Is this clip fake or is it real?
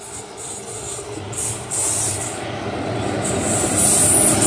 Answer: real